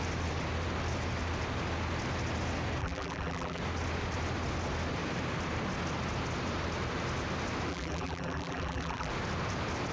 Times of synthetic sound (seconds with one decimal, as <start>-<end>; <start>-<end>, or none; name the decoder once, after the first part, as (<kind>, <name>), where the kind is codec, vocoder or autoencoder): 2.8-3.6 (vocoder, BigVGAN v2); 7.7-9.1